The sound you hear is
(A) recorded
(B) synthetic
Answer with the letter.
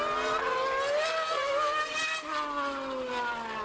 A